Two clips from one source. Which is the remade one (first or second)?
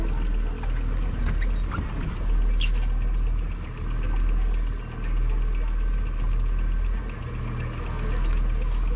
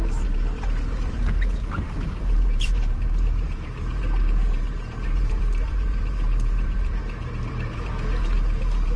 second